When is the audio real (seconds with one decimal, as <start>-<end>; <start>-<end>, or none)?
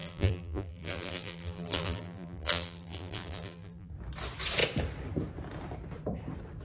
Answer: 3.9-6.6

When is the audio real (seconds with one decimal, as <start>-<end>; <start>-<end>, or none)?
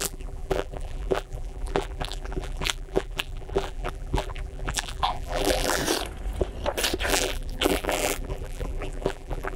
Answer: 5.8-7.1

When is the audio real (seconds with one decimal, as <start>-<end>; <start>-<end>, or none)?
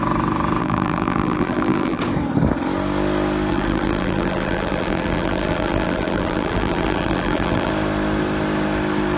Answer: 0.0-0.6; 2.0-3.5; 7.7-9.2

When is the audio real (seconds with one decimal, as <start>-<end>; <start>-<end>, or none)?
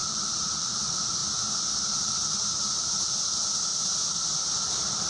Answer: 0.7-5.1